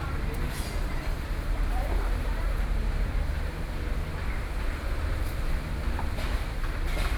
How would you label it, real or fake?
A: fake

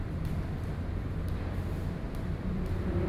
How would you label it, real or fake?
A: fake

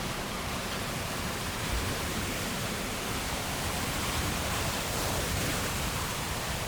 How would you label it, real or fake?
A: fake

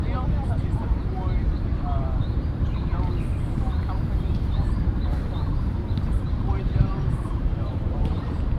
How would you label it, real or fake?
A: fake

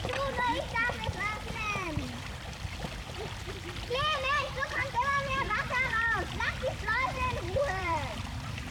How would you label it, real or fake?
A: fake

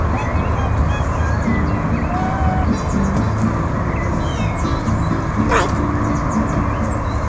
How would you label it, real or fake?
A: real